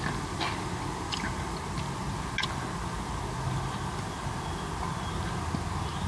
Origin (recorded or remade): recorded